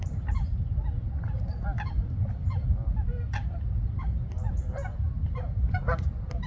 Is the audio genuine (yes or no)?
yes